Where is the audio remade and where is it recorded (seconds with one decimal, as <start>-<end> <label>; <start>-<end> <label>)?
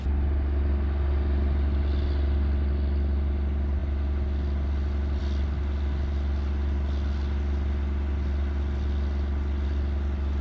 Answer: 0.0-10.4 recorded